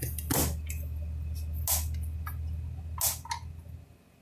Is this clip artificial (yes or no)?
no